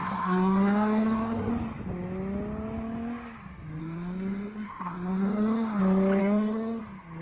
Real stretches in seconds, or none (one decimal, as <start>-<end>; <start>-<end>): 1.5-3.8; 5.8-6.2; 6.8-7.2